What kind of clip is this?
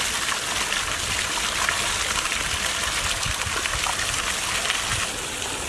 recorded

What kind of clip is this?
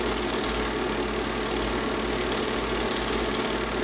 recorded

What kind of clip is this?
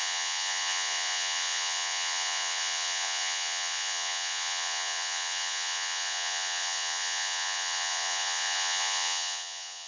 remade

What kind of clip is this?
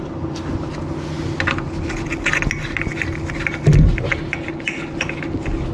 recorded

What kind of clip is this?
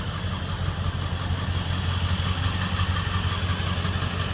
recorded